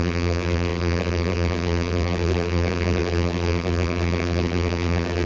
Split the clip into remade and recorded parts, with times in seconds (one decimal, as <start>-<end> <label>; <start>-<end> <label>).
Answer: 0.0-5.3 remade